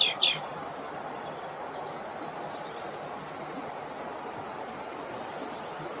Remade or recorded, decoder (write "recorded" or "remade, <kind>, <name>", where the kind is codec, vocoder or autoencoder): recorded